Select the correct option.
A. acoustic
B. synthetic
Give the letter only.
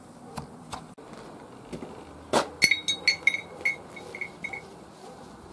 A